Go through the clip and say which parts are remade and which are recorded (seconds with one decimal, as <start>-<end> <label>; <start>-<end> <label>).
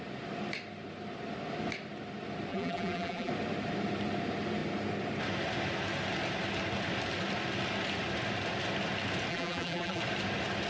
0.0-2.5 recorded; 2.5-3.3 remade; 3.3-9.3 recorded; 9.3-10.0 remade; 10.0-10.7 recorded